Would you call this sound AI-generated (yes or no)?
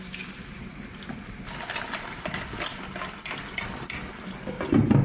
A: no